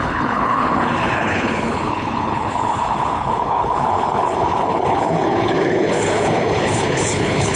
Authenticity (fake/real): fake